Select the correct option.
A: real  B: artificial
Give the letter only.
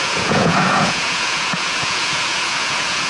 B